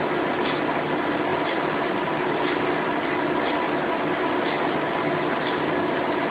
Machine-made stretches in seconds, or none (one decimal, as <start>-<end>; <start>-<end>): none